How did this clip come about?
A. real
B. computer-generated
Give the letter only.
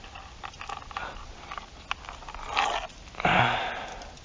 A